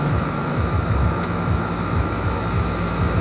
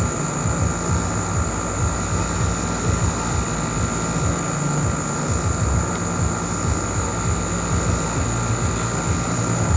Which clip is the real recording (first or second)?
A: second